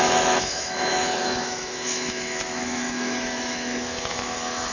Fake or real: fake